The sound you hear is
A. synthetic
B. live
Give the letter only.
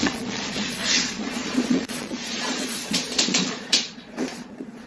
A